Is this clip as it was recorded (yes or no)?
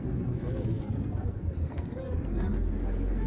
no